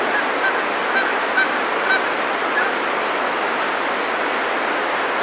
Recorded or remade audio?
recorded